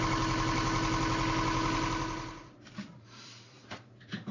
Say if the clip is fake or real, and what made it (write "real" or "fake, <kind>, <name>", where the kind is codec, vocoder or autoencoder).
fake, vocoder, BigVGAN v2